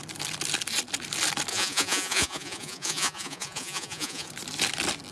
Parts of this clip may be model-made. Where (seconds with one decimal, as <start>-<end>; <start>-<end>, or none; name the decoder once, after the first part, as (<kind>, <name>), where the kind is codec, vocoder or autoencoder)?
1.5-4.3 (vocoder, Vocos)